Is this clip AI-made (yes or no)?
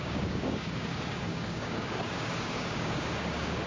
yes